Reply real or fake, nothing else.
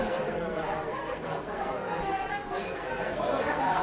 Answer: fake